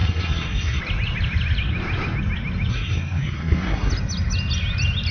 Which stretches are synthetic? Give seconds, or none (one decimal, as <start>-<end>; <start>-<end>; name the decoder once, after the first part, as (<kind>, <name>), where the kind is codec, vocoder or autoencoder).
0.0-0.8 (codec, SNAC); 2.7-3.9